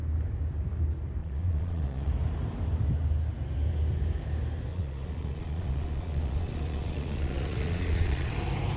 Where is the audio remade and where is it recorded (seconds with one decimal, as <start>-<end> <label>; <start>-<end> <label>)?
0.0-1.2 recorded; 1.2-2.1 remade; 2.1-4.7 recorded; 4.7-8.3 remade; 8.3-8.8 recorded